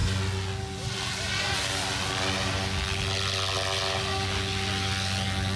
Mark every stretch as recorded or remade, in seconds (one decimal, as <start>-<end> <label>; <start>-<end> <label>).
0.0-5.6 recorded